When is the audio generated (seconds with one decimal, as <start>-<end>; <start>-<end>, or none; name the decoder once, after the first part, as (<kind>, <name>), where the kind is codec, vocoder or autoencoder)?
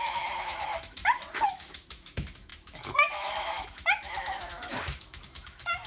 0.0-1.0 (autoencoder, DAC-VAE); 1.5-5.9